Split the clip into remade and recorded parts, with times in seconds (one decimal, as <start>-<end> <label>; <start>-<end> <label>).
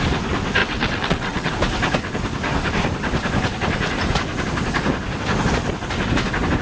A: 0.0-0.6 recorded; 0.6-1.5 remade; 1.5-6.6 recorded